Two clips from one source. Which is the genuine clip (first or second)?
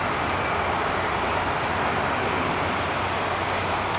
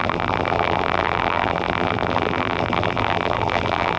first